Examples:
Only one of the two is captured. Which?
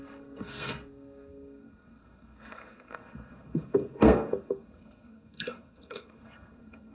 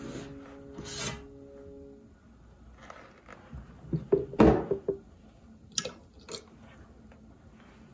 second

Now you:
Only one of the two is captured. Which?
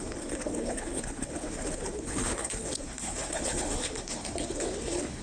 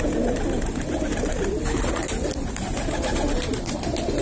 second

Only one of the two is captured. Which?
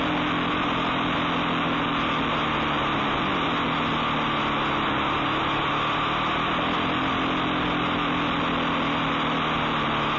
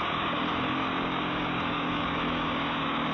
first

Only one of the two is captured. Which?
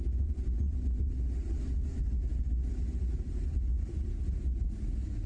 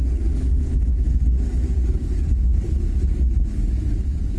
first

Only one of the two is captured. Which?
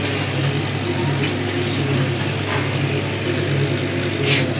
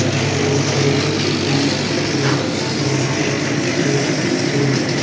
first